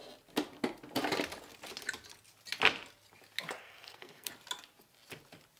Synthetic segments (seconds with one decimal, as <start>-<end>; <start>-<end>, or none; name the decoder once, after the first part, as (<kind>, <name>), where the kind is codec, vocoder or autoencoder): 3.6-4.3 (codec, SNAC)